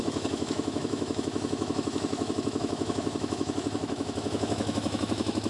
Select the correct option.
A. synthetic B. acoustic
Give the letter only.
A